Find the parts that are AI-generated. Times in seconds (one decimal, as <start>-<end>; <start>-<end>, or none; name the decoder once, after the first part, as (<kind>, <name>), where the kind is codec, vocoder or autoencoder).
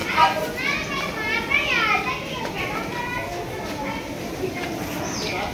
none